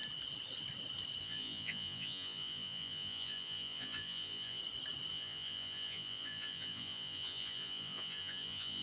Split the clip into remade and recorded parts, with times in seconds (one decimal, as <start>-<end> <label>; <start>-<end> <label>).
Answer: 0.0-1.2 recorded; 1.2-4.6 remade; 4.6-5.1 recorded; 5.1-8.8 remade